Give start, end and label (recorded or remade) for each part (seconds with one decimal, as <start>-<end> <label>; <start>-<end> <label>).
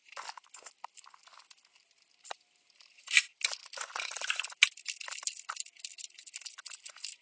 0.0-7.2 recorded